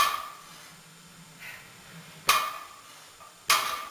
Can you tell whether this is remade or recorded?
recorded